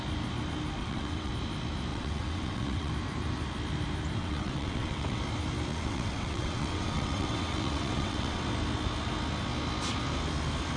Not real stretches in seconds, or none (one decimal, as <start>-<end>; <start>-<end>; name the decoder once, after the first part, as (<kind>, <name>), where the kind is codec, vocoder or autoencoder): 0.8-1.3 (vocoder, WaveNeXt); 1.9-2.9; 4.2-5.2; 5.7-8.4